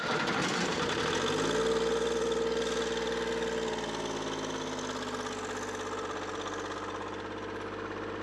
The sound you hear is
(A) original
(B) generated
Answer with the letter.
A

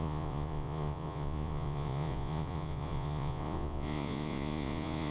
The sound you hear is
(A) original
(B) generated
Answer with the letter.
B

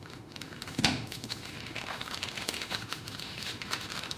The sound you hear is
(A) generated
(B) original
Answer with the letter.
A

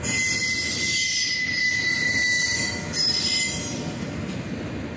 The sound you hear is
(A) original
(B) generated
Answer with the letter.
A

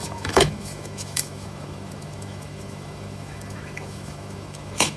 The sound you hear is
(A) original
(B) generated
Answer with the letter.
B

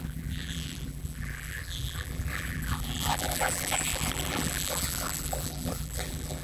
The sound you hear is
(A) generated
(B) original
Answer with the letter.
A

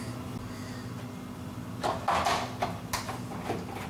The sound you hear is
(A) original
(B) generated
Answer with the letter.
A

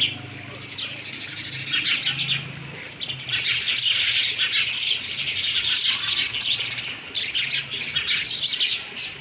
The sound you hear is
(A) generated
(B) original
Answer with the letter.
B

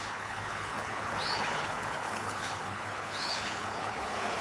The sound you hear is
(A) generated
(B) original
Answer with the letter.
A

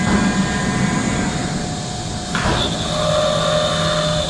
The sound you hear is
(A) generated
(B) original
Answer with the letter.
B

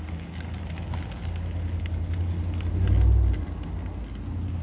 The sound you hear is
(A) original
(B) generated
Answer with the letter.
A